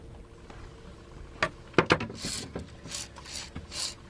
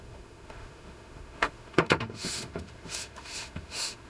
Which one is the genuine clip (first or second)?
first